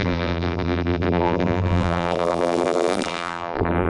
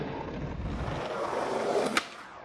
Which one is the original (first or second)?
second